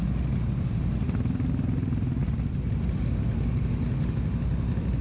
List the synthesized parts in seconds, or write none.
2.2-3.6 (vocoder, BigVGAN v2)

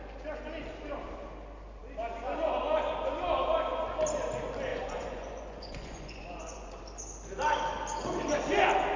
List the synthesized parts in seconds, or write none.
4.7-6.8 (vocoder, Vocos)

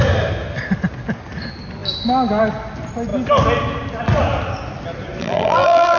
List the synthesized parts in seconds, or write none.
5.2-6.0 (vocoder, BigVGAN v2)

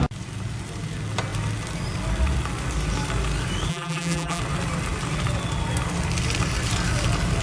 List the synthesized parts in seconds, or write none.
3.7-4.4 (vocoder, BigVGAN v2)

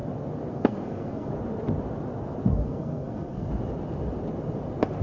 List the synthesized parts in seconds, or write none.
0.5-1.3 (codec, SNAC); 2.5-3.5

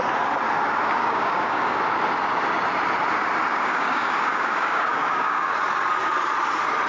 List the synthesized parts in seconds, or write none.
1.0-1.8 (codec, DAC); 3.5-5.5

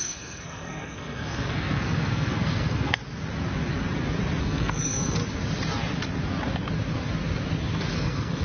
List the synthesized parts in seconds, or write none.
0.0-3.0 (codec, SNAC); 4.4-5.2; 7.9-8.4